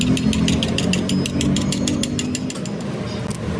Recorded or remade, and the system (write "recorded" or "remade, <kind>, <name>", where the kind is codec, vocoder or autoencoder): recorded